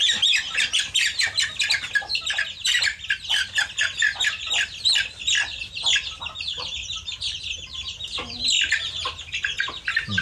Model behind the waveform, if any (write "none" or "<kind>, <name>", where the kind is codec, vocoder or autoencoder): none